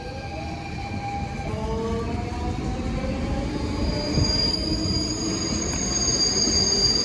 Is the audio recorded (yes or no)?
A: yes